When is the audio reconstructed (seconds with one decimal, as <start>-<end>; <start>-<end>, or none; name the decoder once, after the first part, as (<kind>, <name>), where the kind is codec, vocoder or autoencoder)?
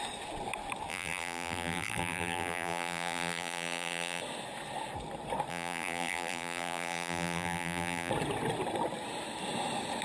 0.9-4.2 (vocoder, BigVGAN v2); 5.5-8.1